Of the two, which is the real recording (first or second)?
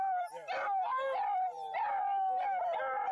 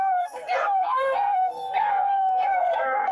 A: first